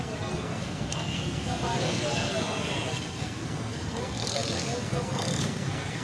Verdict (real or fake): fake